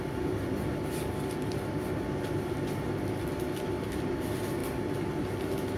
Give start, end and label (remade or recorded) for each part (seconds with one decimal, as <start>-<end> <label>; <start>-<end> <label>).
0.0-5.8 recorded